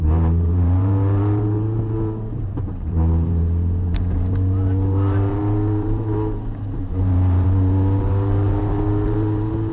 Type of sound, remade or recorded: remade